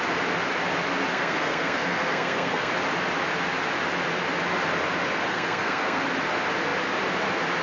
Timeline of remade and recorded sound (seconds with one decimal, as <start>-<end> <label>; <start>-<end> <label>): 0.0-1.1 recorded; 1.1-2.7 remade; 2.7-5.3 recorded; 5.3-6.0 remade; 6.0-7.6 recorded

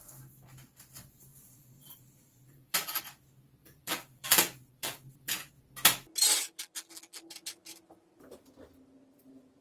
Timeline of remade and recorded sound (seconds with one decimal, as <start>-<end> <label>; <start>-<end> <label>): 0.0-1.3 recorded; 1.3-3.0 remade; 3.0-3.6 recorded; 3.6-5.5 remade; 5.5-6.4 recorded; 6.4-7.3 remade; 7.3-9.6 recorded

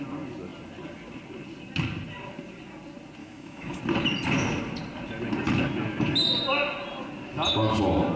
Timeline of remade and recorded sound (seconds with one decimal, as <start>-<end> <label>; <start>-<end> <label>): 0.0-3.2 recorded; 3.2-3.8 remade; 3.8-8.2 recorded

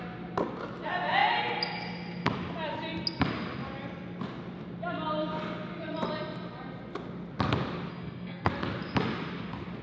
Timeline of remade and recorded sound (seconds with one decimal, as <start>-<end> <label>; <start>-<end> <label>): 0.0-7.9 recorded; 7.9-8.5 remade; 8.5-9.8 recorded

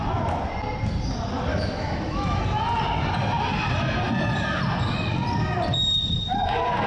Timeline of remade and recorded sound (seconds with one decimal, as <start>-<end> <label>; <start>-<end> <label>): 0.0-1.5 recorded; 1.5-2.4 remade; 2.4-6.9 recorded

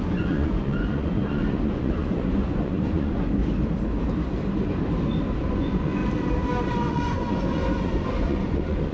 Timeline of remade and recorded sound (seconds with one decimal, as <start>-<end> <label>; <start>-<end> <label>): 0.0-3.4 remade; 3.4-5.4 recorded; 5.4-6.0 remade; 6.0-6.9 recorded; 6.9-8.9 remade